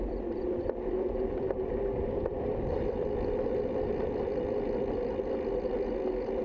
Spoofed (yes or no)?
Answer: yes